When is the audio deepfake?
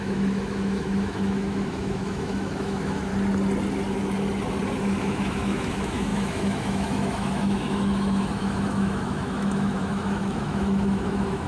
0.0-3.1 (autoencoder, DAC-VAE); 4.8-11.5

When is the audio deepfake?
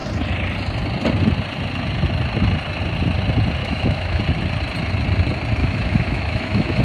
3.6-4.2 (autoencoder, DAC-VAE); 5.6-6.8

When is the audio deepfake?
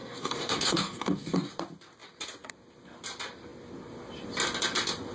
0.0-1.5 (codec, DAC)